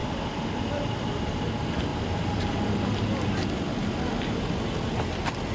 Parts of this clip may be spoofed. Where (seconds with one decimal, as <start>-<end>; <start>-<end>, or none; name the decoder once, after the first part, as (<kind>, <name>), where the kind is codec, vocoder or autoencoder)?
none